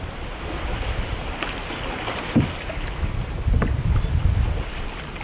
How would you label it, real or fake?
real